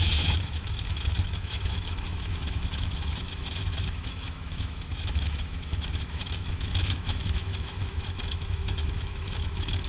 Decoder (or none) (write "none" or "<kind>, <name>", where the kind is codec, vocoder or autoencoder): autoencoder, DAC-VAE